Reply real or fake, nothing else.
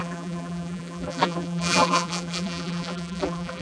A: fake